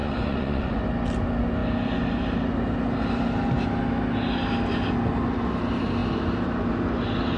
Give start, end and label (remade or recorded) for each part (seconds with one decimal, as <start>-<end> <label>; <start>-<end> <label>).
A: 0.0-0.8 remade; 0.8-7.4 recorded